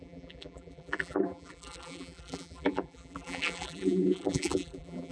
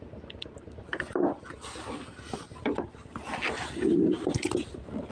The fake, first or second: first